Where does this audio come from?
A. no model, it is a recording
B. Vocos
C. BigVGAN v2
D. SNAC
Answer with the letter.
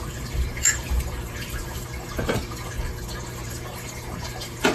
C